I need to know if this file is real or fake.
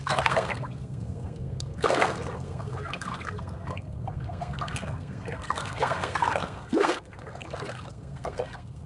fake